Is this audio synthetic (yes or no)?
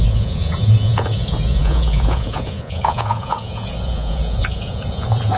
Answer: yes